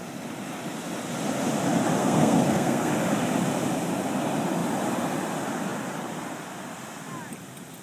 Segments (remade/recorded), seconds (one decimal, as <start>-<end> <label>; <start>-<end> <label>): 0.0-2.0 recorded; 2.0-2.9 remade; 2.9-7.8 recorded